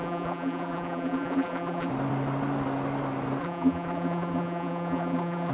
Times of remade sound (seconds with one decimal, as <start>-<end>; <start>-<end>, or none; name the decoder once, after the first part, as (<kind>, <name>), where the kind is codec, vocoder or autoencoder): 0.0-1.9 (vocoder, BigVGAN v2); 3.4-5.5